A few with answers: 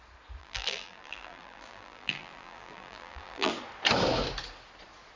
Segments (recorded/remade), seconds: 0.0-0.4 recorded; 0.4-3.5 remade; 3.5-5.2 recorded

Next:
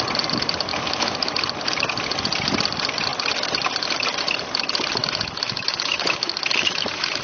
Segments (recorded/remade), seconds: 0.0-0.7 recorded; 0.7-1.4 remade; 1.4-5.0 recorded; 5.0-7.2 remade

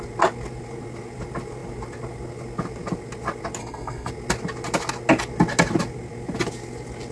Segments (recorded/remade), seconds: 0.0-3.6 recorded; 3.6-4.1 remade; 4.1-7.1 recorded

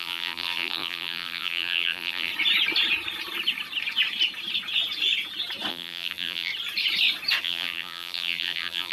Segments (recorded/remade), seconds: 0.0-2.3 remade; 2.3-5.7 recorded; 5.7-6.5 remade; 6.5-7.4 recorded; 7.4-8.9 remade

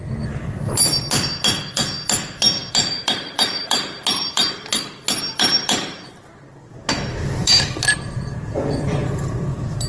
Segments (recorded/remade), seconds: 0.0-9.9 remade

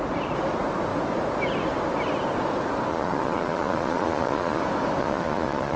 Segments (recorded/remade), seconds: 0.0-2.9 recorded; 2.9-4.6 remade; 4.6-5.0 recorded; 5.0-5.8 remade

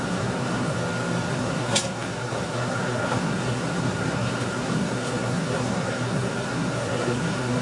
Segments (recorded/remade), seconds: 0.0-0.8 remade; 0.8-1.3 recorded; 1.3-7.6 remade

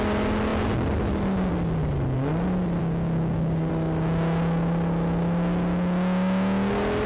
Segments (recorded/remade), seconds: 0.0-2.8 recorded; 2.8-3.7 remade; 3.7-7.1 recorded